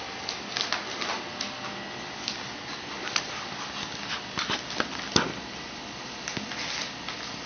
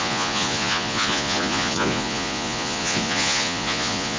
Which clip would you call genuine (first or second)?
first